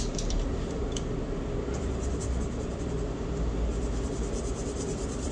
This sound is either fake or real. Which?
fake